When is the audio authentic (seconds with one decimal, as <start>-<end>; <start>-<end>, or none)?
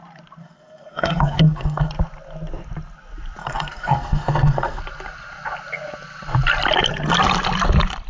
0.0-0.4; 1.9-3.4; 4.8-8.1